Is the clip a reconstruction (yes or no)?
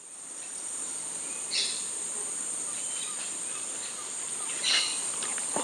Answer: no